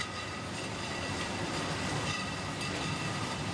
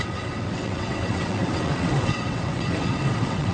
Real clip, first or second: first